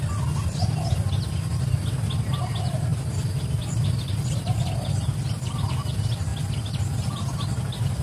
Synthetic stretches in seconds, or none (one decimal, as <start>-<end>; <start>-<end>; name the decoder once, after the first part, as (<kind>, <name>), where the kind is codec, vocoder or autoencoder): 2.9-3.4 (vocoder, BigVGAN v2)